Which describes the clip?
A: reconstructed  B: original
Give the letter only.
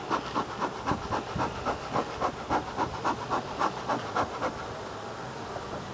B